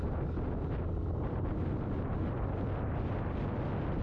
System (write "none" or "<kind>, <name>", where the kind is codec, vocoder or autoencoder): none